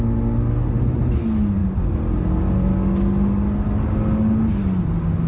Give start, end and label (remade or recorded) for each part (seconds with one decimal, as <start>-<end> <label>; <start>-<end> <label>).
0.0-5.3 recorded